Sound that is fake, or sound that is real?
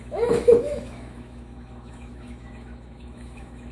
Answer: fake